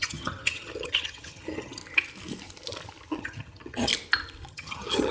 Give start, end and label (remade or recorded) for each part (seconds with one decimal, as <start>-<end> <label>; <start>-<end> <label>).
0.0-1.8 remade; 1.8-3.2 recorded; 3.2-3.9 remade; 3.9-4.5 recorded; 4.5-5.1 remade